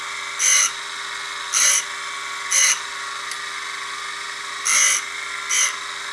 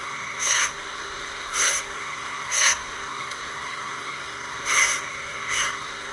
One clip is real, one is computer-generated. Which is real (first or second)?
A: first